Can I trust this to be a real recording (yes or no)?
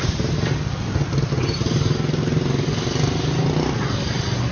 yes